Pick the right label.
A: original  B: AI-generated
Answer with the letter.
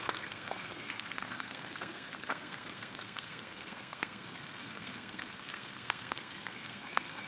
B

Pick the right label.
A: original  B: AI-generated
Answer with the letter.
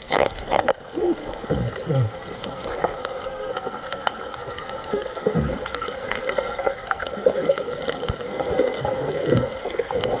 B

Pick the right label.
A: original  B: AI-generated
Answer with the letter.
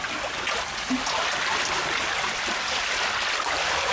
A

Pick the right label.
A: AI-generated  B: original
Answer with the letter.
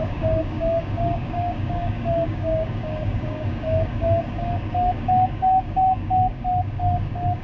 A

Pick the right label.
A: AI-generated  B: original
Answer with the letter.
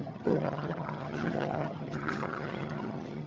A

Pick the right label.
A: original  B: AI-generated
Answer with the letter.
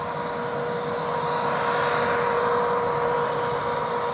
A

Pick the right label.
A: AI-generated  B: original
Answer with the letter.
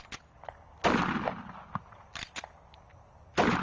B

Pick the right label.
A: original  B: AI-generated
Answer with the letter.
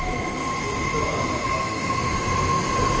A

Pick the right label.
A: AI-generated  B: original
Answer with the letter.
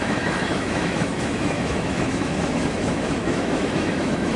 A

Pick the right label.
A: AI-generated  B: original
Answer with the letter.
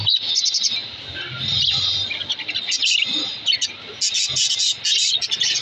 B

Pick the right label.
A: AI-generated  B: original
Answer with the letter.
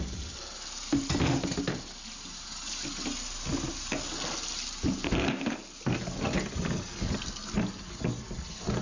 B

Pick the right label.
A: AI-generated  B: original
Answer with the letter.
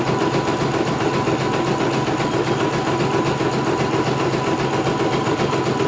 B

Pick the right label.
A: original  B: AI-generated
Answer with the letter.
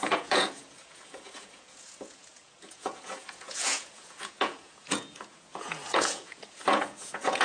B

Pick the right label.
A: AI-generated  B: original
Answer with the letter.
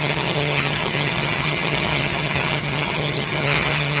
A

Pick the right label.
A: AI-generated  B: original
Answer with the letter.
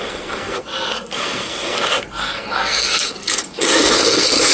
A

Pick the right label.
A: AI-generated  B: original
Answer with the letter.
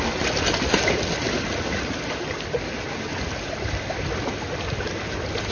A